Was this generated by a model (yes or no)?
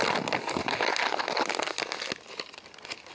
no